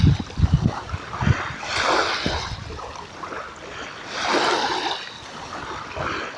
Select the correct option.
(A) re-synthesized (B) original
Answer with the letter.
B